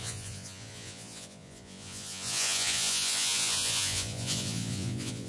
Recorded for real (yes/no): no